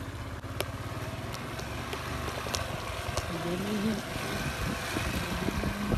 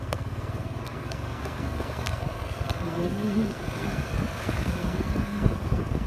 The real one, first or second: first